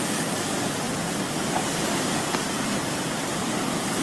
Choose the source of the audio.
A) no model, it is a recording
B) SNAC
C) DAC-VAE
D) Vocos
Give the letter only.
A